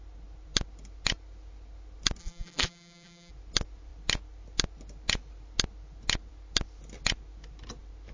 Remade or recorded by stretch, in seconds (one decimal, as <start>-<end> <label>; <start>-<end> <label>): 0.0-2.2 recorded; 2.2-3.3 remade; 3.3-8.1 recorded